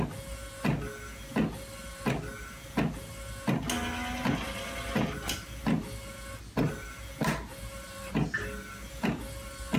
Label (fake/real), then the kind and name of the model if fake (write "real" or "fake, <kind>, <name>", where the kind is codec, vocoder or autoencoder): real